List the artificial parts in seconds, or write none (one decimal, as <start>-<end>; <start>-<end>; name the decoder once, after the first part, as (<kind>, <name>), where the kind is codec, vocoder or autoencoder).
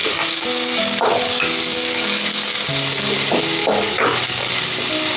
0.0-2.7 (codec, DAC); 3.6-4.5